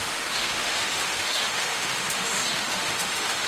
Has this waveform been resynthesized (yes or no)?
yes